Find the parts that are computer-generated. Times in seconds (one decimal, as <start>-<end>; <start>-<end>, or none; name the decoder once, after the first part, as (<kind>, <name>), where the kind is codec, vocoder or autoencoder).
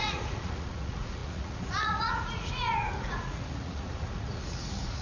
0.0-5.0 (vocoder, Vocos)